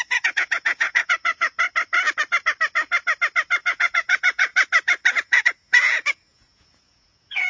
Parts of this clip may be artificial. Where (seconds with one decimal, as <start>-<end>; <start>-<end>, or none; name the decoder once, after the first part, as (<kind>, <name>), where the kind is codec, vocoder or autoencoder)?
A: 0.0-1.5 (vocoder, Vocos); 3.7-4.5; 5.1-7.5